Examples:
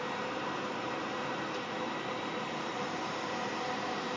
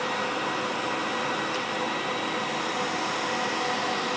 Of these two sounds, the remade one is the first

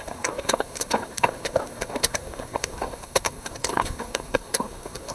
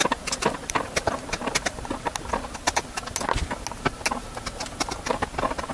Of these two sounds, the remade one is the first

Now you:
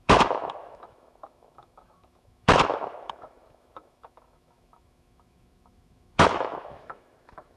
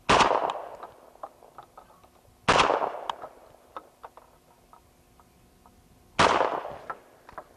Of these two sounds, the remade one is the first